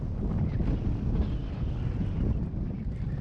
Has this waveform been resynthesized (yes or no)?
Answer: no